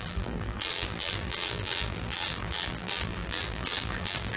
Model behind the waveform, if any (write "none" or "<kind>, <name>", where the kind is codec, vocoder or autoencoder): vocoder, BigVGAN v2